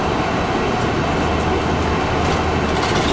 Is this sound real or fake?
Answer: real